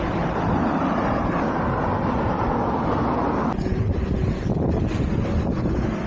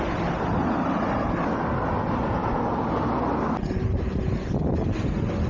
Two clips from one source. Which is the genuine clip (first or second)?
second